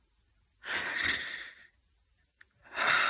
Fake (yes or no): no